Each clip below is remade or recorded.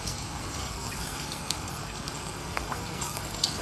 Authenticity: remade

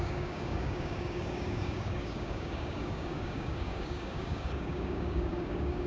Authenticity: remade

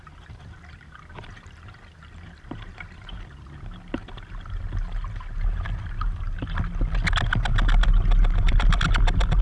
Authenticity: recorded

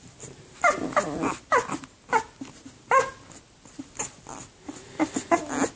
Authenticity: recorded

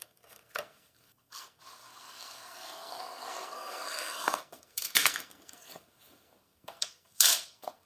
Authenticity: remade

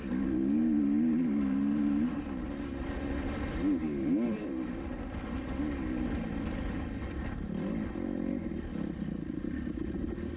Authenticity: recorded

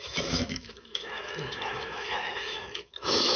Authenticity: remade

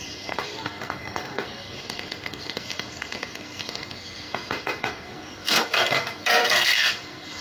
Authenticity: remade